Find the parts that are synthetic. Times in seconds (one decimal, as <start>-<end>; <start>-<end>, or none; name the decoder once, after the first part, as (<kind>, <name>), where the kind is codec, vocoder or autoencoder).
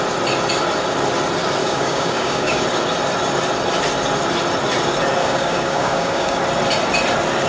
1.6-2.6 (codec, DAC); 5.2-6.4